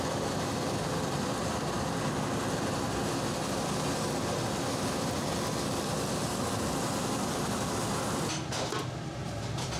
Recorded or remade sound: recorded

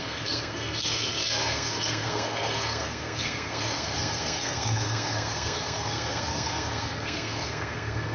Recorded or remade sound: remade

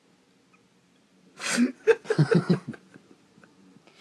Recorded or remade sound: recorded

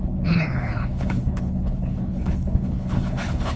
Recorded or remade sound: remade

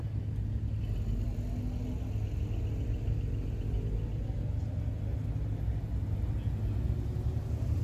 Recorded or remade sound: recorded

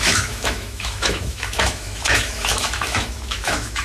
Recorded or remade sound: remade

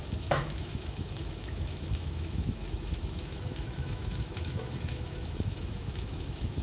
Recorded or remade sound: remade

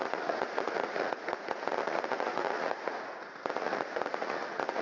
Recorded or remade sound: remade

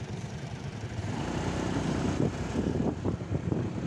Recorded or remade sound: remade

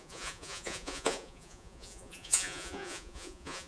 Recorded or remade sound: remade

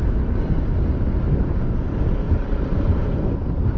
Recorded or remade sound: recorded